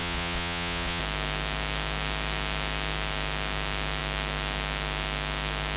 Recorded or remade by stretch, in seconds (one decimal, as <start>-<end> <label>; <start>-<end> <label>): 0.0-1.0 remade; 1.0-5.8 recorded